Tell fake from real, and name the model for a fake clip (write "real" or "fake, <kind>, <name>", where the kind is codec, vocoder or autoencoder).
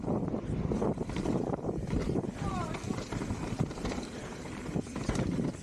fake, vocoder, BigVGAN v2